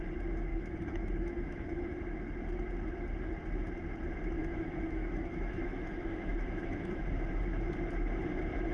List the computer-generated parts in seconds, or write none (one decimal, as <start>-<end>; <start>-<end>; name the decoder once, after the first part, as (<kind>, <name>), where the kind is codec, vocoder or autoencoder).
0.5-2.0 (autoencoder, DAC-VAE); 4.4-7.0